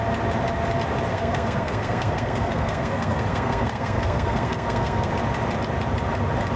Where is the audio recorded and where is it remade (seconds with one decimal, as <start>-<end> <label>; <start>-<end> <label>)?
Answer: 0.0-1.1 recorded; 1.1-5.1 remade; 5.1-6.6 recorded